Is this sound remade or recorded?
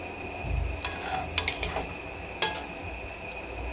recorded